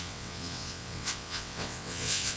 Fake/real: fake